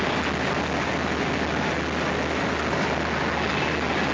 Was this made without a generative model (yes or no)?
yes